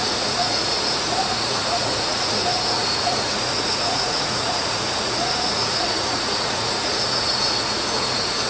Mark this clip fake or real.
fake